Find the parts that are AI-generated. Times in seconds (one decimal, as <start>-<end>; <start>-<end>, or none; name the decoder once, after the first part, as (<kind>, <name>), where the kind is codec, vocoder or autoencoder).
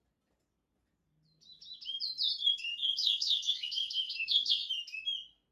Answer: 2.4-4.7 (codec, SNAC)